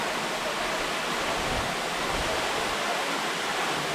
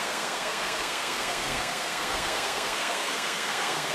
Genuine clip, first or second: first